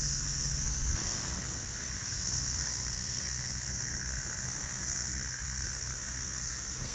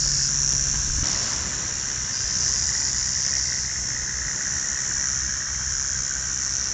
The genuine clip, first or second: second